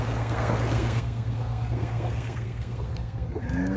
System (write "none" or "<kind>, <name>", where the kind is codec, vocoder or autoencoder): codec, SNAC